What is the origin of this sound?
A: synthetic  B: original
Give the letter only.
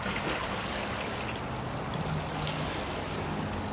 B